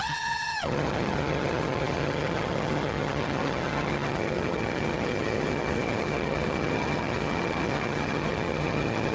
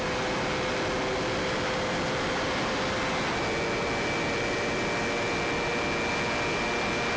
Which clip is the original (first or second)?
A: second